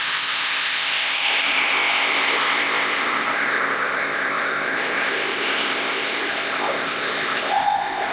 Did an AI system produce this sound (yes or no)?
yes